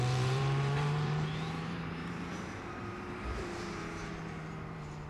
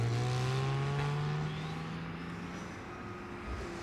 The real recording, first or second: second